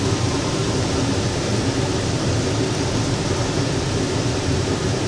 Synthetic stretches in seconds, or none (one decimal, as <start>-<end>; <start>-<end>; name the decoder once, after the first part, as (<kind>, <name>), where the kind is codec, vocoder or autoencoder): 0.0-1.5 (vocoder, BigVGAN v2); 3.5-5.1

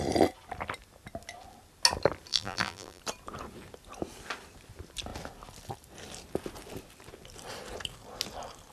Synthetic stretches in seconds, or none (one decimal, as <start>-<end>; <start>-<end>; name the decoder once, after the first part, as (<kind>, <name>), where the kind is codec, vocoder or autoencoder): 2.3-3.0 (vocoder, BigVGAN v2)

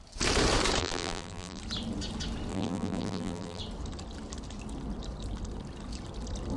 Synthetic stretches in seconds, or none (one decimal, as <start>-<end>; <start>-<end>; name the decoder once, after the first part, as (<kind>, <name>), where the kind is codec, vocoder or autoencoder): 0.8-1.6 (vocoder, BigVGAN v2); 2.5-3.6